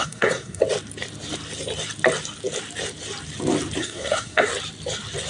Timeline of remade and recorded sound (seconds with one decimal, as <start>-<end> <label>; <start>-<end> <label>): 0.0-0.6 remade; 0.6-3.8 recorded; 3.8-4.5 remade; 4.5-5.3 recorded